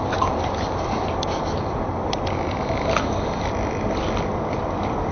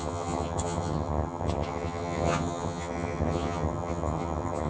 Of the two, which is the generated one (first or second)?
second